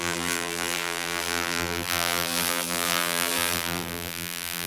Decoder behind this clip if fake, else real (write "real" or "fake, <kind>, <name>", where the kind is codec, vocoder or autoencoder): fake, vocoder, BigVGAN v2